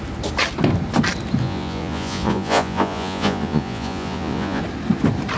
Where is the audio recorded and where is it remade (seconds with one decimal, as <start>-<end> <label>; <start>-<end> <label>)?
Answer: 0.0-1.4 recorded; 1.4-4.6 remade; 4.6-5.4 recorded